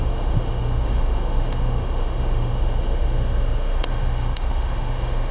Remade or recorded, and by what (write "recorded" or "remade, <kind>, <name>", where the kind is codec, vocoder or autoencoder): remade, autoencoder, DAC-VAE